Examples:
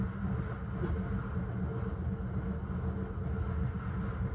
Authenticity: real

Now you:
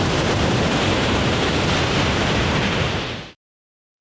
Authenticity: fake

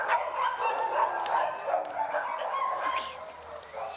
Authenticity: real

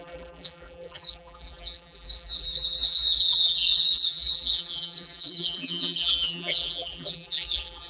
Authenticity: fake